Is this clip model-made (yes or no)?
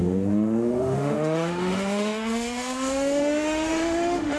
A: yes